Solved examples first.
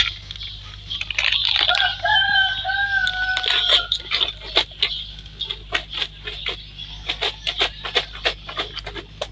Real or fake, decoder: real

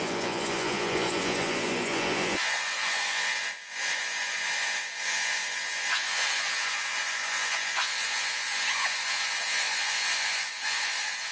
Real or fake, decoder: fake, vocoder, Vocos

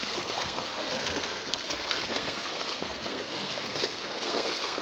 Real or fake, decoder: fake, codec, SNAC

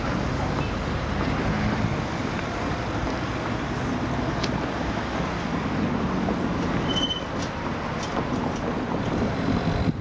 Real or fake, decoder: real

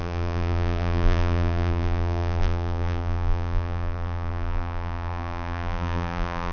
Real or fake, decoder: fake, vocoder, BigVGAN v2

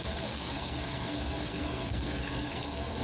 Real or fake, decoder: fake, codec, SNAC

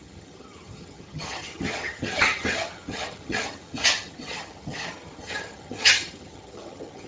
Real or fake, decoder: fake, vocoder, HiFi-GAN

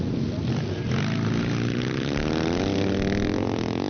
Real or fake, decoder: real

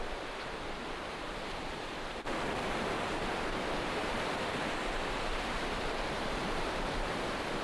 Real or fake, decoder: fake, vocoder, BigVGAN v2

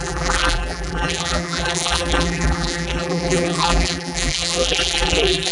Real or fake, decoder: fake, vocoder, BigVGAN v2